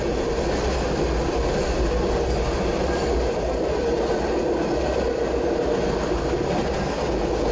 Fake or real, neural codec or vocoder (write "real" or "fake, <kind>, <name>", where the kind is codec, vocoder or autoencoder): real